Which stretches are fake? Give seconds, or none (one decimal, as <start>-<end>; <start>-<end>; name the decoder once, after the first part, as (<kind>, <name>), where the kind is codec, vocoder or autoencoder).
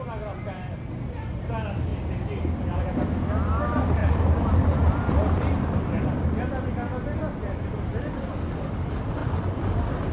none